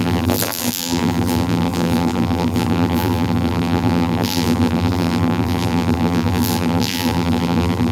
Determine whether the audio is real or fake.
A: fake